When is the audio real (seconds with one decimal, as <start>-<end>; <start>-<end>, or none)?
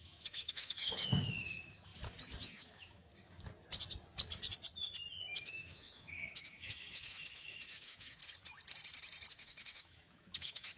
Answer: 1.9-2.4; 3.1-5.2; 8.2-9.3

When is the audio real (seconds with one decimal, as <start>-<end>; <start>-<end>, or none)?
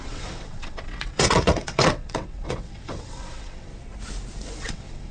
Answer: 3.7-4.6